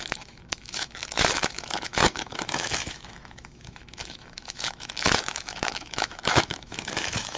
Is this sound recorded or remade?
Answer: remade